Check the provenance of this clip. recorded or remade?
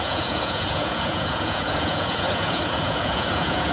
remade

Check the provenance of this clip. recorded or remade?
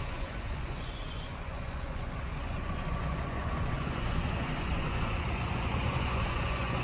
remade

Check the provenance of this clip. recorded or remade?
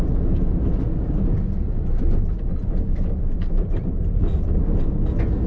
recorded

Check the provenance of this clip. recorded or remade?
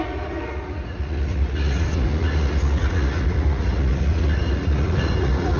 remade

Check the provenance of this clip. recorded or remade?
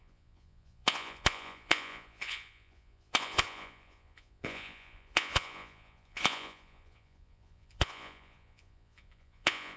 remade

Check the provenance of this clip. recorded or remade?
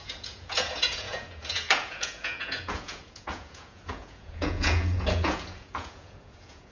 remade